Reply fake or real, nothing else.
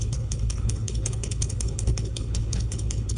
fake